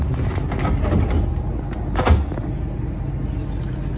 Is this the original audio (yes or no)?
yes